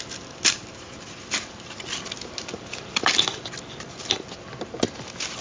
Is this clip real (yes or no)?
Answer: yes